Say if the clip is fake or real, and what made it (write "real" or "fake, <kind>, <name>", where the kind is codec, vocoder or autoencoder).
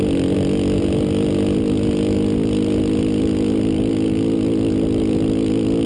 real